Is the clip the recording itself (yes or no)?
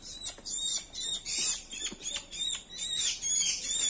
no